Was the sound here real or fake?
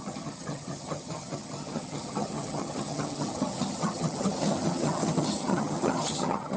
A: fake